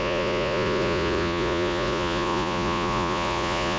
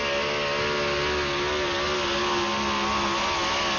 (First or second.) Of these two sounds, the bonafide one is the second